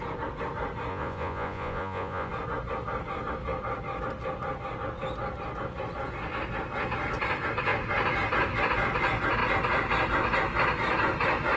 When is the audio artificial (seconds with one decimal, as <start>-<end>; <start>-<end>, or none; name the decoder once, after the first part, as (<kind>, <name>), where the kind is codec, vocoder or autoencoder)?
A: 0.9-2.3 (vocoder, Vocos)